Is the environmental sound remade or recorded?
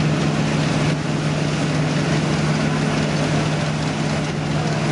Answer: recorded